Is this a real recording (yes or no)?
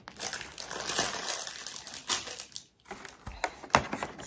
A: yes